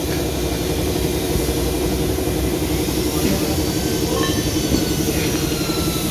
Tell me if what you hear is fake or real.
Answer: real